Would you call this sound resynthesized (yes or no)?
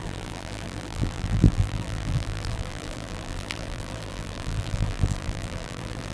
yes